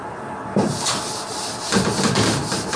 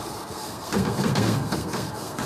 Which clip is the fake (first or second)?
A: second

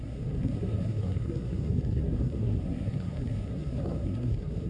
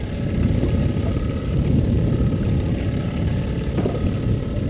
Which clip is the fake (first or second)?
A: first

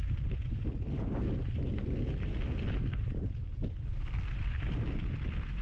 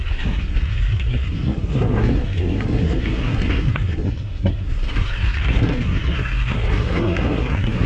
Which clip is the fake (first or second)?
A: second